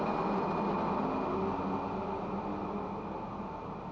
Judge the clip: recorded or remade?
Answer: recorded